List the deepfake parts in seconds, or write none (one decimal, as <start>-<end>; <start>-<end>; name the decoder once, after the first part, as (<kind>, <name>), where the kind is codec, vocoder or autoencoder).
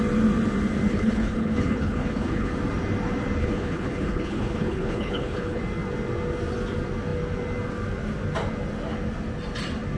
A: 0.9-2.5 (codec, HILCodec); 3.4-5.6